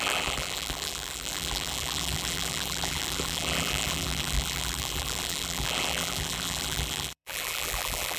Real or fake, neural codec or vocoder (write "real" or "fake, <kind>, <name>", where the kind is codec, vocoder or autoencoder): fake, vocoder, BigVGAN v2